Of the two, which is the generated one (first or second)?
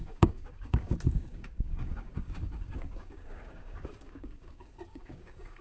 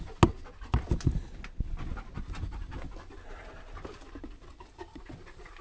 first